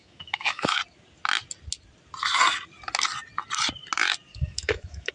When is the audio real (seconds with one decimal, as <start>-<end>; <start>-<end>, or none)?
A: 0.8-4.3